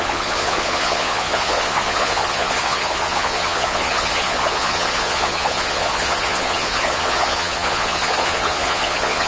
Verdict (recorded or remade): remade